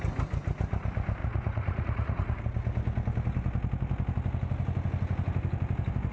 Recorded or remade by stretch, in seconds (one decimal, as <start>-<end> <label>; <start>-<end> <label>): 0.0-1.2 recorded; 1.2-2.4 remade; 2.4-6.1 recorded